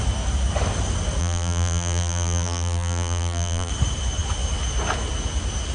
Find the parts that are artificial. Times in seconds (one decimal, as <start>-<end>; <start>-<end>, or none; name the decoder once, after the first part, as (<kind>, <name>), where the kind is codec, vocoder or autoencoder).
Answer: 1.2-3.7 (vocoder, BigVGAN v2)